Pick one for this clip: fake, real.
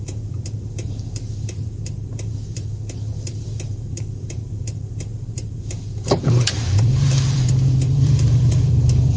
fake